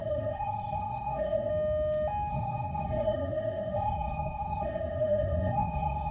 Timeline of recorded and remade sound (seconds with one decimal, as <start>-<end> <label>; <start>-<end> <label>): 0.0-1.5 remade; 1.5-2.3 recorded; 2.3-6.1 remade